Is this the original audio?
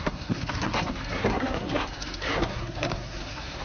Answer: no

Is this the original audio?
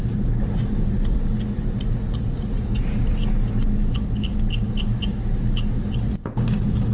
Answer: yes